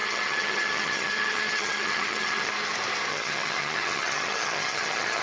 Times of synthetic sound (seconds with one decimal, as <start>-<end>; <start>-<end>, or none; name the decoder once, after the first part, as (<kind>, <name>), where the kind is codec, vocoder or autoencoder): 0.0-2.5 (vocoder, HiFi-GAN); 3.1-5.2